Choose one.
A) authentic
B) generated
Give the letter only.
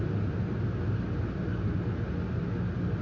A